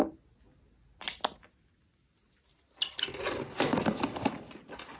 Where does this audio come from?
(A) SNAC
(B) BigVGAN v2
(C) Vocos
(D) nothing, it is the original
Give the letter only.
D